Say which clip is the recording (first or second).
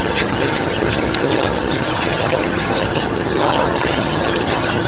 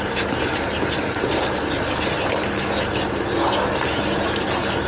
second